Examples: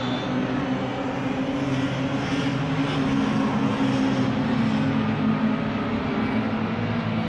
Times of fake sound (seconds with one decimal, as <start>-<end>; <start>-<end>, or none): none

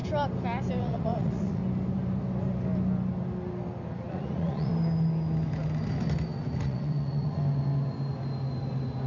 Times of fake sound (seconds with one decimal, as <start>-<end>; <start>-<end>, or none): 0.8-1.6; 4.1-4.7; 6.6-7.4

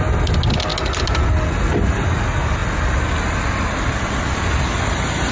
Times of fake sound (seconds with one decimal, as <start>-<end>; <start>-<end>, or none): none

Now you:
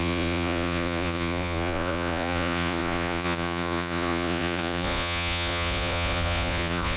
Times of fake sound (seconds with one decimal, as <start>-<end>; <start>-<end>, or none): 0.0-7.0

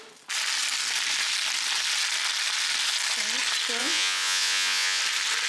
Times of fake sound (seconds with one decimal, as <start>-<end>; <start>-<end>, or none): 3.8-5.0

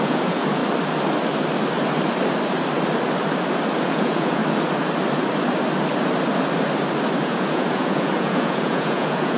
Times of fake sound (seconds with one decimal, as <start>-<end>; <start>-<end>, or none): 0.0-0.6; 3.8-4.4; 7.2-9.4